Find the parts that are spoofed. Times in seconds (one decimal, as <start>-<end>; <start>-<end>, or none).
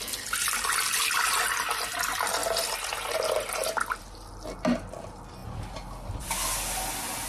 none